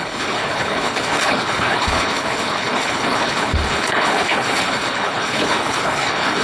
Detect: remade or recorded remade